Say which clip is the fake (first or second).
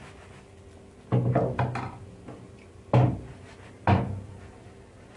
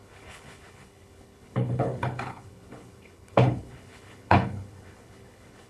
second